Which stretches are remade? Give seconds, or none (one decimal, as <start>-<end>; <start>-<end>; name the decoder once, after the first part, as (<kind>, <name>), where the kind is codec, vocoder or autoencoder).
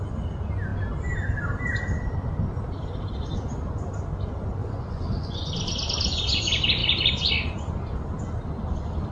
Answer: 4.6-5.5 (vocoder, Vocos)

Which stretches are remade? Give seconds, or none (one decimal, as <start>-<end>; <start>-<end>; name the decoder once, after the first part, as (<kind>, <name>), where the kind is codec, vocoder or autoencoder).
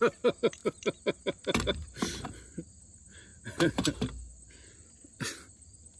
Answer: none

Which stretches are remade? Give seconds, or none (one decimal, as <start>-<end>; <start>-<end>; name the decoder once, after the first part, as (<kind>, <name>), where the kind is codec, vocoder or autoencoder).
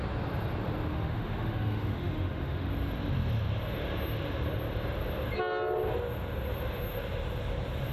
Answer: 0.9-2.7 (autoencoder, DAC-VAE)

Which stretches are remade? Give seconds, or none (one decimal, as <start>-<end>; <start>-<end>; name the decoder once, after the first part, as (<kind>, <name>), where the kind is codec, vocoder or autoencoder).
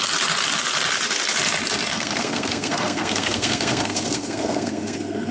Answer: 1.9-5.3 (codec, SNAC)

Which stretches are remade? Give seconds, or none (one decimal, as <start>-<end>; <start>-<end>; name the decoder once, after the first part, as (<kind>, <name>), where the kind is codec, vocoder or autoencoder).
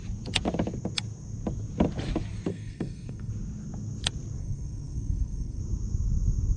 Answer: 2.5-3.3 (codec, SNAC); 4.4-5.6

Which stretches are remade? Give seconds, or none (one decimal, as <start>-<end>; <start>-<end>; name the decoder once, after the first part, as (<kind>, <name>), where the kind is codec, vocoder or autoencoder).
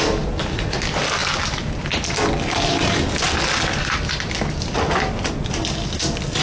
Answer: none